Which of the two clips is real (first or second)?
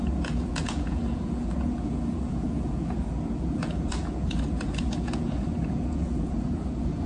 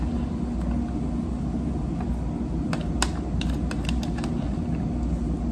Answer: second